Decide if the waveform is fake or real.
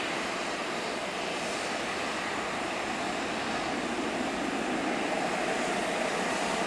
real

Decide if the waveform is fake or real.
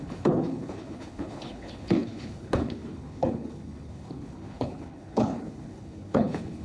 fake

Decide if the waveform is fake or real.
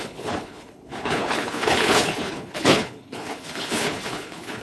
fake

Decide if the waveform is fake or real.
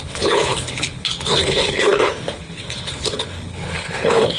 fake